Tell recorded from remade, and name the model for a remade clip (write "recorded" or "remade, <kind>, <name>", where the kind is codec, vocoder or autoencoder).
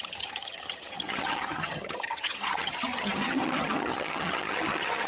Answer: remade, vocoder, HiFi-GAN